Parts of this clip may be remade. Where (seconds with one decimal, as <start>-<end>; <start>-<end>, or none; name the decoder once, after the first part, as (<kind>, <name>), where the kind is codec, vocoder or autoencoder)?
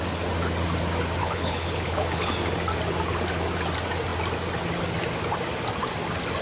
1.2-2.3 (codec, HILCodec)